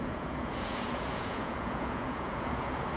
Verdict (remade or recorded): remade